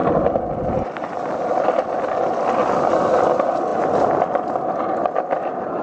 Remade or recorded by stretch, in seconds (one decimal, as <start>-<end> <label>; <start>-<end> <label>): 0.0-5.8 recorded

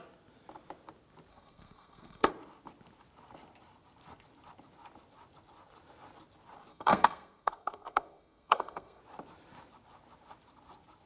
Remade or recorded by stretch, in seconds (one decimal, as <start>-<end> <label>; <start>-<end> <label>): 0.0-1.3 recorded; 1.3-2.3 remade; 2.3-6.7 recorded; 6.7-9.0 remade; 9.0-11.1 recorded

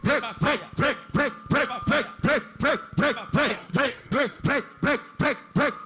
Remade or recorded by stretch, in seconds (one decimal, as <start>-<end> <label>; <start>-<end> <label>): 0.0-3.5 recorded; 3.5-4.4 remade; 4.4-5.9 recorded

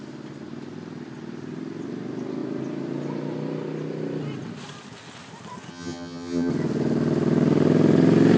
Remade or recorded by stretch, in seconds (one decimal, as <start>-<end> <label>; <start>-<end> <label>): 0.0-5.7 recorded; 5.7-6.5 remade; 6.5-8.4 recorded

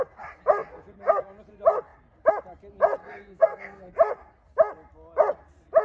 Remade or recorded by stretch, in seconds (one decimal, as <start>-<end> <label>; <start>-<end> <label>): 0.0-3.0 recorded; 3.0-3.9 remade; 3.9-5.8 recorded

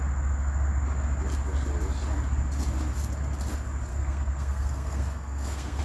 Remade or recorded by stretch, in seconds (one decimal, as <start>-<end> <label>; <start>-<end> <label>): 0.0-3.9 recorded; 3.9-5.8 remade

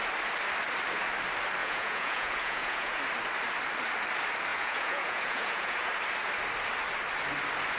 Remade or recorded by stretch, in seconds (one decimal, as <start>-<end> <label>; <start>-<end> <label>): 0.0-1.6 recorded; 1.6-3.0 remade; 3.0-4.5 recorded; 4.5-5.9 remade; 5.9-7.8 recorded

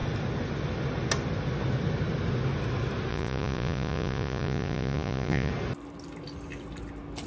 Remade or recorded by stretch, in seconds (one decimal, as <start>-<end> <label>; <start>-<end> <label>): 0.0-3.1 recorded; 3.1-5.5 remade; 5.5-7.3 recorded